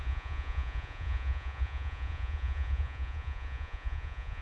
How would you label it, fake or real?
fake